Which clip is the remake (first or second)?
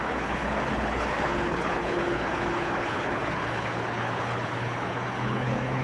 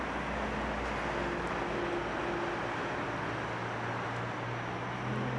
first